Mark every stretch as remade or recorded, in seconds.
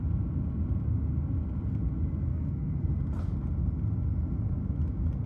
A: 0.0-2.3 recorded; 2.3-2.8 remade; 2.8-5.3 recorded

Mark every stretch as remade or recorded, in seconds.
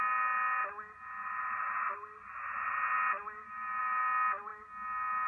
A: 0.0-5.3 recorded